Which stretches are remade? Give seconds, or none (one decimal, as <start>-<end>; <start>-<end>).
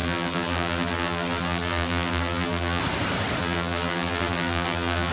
0.0-2.8; 3.4-5.1